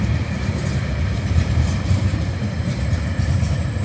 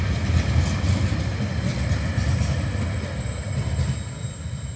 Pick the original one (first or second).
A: second